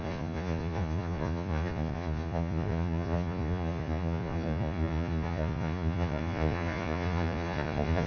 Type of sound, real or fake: fake